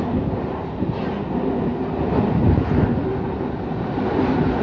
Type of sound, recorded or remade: recorded